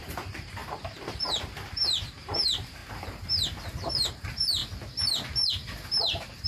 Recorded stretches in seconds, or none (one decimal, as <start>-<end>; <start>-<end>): 2.8-3.9; 4.6-5.5